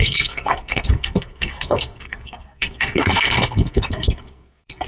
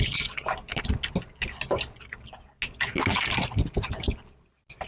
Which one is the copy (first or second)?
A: first